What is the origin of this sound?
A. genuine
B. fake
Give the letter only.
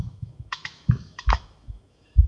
B